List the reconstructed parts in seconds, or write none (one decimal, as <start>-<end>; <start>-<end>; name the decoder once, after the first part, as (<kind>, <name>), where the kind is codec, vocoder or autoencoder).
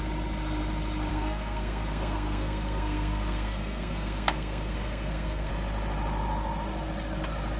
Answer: 1.1-5.5 (codec, SNAC)